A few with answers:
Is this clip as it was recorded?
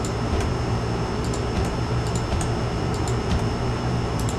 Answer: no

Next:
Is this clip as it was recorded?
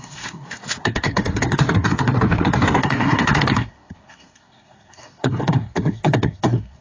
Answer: no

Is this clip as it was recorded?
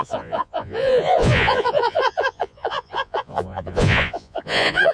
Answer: no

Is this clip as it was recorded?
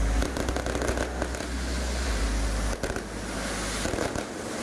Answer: yes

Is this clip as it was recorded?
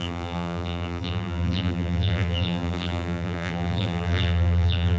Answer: no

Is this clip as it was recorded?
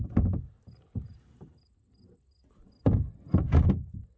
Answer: yes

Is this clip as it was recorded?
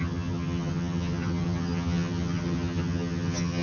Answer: no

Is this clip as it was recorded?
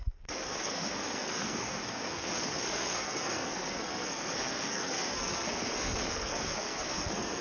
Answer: no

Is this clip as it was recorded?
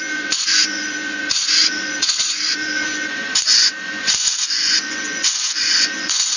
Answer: no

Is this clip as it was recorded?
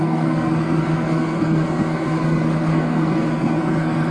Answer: no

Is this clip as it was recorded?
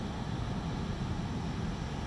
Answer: yes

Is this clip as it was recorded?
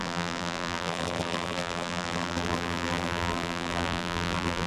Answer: no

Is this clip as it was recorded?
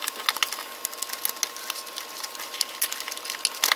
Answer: yes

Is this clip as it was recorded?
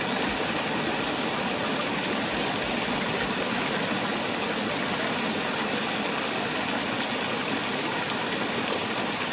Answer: yes